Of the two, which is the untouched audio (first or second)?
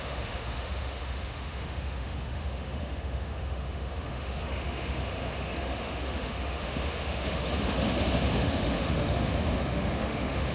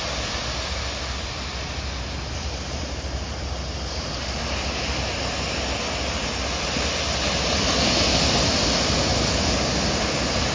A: second